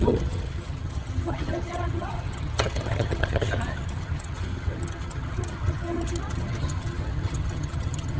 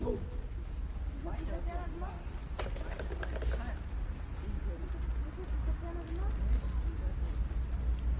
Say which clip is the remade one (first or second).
first